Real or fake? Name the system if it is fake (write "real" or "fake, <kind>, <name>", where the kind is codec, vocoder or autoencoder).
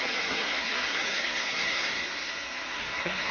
fake, codec, SNAC